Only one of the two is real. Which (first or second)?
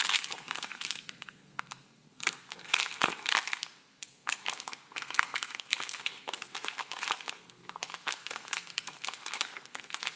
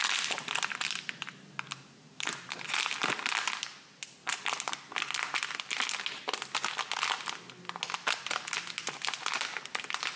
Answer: second